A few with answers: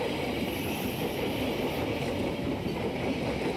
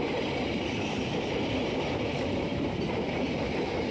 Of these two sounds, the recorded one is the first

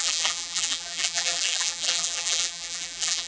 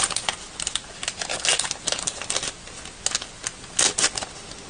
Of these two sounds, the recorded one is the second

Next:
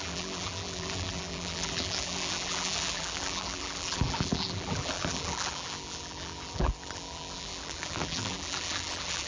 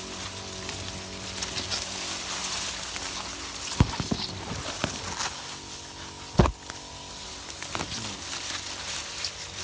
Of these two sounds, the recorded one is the second